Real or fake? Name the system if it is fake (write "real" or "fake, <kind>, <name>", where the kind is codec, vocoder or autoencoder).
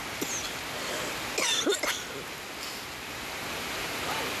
real